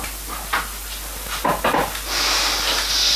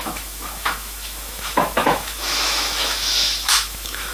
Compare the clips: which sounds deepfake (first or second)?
second